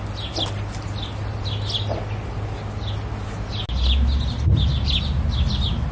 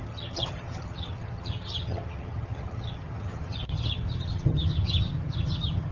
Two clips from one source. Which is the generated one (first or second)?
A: second